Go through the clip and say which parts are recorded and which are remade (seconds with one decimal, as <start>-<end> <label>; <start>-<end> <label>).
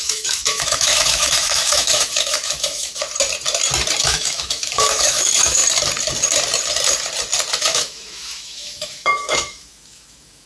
0.0-3.0 remade; 3.0-4.0 recorded; 4.0-5.6 remade; 5.6-7.6 recorded; 7.6-10.5 remade